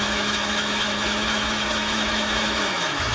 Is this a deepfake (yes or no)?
yes